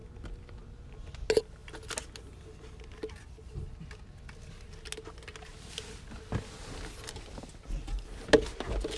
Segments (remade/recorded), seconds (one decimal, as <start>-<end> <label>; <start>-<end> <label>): 0.0-9.0 recorded